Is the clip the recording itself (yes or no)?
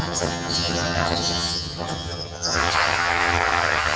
no